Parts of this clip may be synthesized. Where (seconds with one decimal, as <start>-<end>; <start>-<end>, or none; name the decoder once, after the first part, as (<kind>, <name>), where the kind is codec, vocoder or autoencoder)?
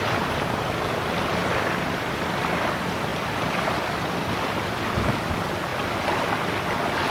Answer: 1.4-2.6 (vocoder, BigVGAN v2); 3.1-4.8; 5.7-6.4